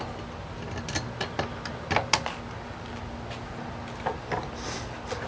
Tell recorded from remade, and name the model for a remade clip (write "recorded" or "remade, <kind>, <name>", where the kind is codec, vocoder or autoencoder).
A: recorded